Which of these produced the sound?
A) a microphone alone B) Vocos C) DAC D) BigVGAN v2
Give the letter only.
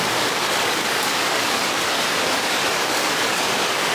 C